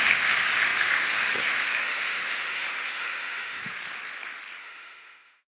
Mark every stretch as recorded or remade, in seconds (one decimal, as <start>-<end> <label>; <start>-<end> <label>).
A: 0.0-3.6 remade; 3.6-4.6 recorded; 4.6-5.5 remade

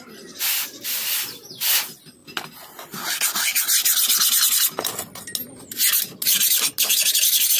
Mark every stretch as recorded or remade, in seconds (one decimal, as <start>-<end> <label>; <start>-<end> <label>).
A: 0.0-7.6 recorded

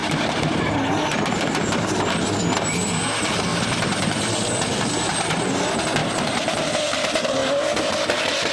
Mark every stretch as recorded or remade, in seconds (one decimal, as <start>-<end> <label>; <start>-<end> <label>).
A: 0.0-2.1 remade; 2.1-3.5 recorded; 3.5-5.5 remade; 5.5-6.0 recorded; 6.0-6.7 remade; 6.7-7.4 recorded; 7.4-7.9 remade; 7.9-8.5 recorded

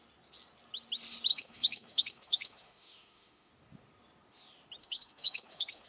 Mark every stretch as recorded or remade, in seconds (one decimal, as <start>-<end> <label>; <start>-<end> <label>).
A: 0.0-1.3 recorded; 1.3-3.5 remade; 3.5-4.8 recorded; 4.8-5.9 remade